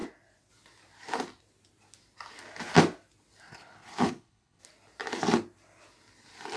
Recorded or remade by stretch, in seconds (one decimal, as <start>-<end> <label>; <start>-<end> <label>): 0.0-3.5 recorded; 3.5-4.6 remade; 4.6-6.6 recorded